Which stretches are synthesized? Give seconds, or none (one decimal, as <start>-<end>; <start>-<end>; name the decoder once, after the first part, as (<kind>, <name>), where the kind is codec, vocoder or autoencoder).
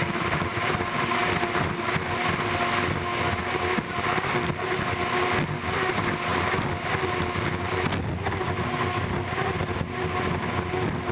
none